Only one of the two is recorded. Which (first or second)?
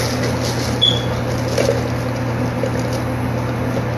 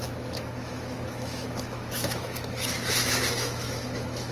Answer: first